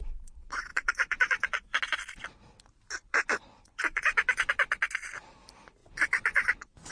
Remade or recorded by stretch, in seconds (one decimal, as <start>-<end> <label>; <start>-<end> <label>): 0.0-0.7 recorded; 0.7-1.8 remade; 1.8-3.0 recorded; 3.0-4.5 remade; 4.5-5.8 recorded; 5.8-6.9 remade